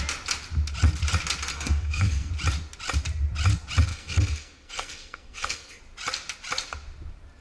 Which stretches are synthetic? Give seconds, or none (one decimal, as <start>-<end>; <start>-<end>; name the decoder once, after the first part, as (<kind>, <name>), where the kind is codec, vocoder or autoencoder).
1.5-2.3 (codec, SNAC); 3.9-5.8